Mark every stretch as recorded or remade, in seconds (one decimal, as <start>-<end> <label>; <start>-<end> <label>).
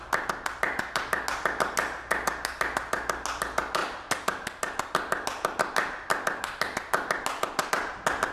0.0-8.3 recorded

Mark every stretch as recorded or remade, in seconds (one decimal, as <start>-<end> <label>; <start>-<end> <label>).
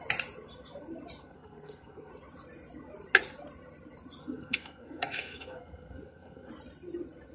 0.0-1.2 recorded; 1.2-2.1 remade; 2.1-4.2 recorded; 4.2-6.5 remade; 6.5-7.3 recorded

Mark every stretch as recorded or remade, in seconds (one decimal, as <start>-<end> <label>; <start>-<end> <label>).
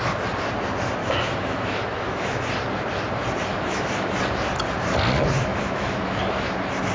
0.0-1.0 recorded; 1.0-2.4 remade; 2.4-3.5 recorded; 3.5-4.1 remade; 4.1-5.5 recorded; 5.5-6.2 remade; 6.2-6.9 recorded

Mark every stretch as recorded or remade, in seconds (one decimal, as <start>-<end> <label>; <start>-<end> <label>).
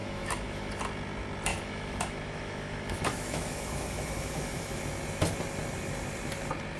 0.0-0.7 remade; 0.7-1.5 recorded; 1.5-4.8 remade; 4.8-6.8 recorded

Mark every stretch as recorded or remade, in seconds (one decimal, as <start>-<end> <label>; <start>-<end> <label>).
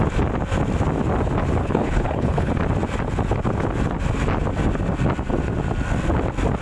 0.0-1.6 recorded; 1.6-2.5 remade; 2.5-6.6 recorded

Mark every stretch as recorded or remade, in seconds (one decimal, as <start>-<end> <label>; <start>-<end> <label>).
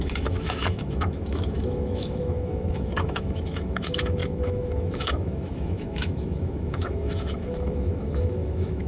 0.0-8.9 remade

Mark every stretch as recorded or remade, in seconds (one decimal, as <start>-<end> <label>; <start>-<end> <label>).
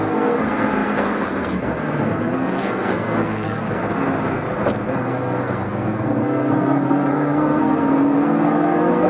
0.0-3.8 remade; 3.8-4.9 recorded; 4.9-9.1 remade